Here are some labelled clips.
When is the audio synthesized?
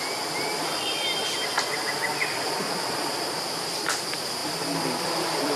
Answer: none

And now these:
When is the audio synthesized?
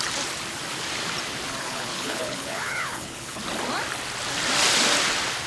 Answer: 1.6-3.4 (codec, HILCodec)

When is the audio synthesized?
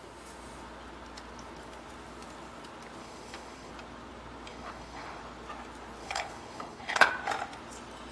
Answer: 3.0-3.7 (codec, HILCodec); 4.5-5.2; 6.0-7.1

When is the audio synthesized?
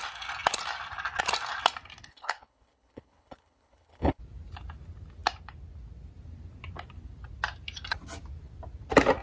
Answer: 2.1-4.2 (codec, HILCodec)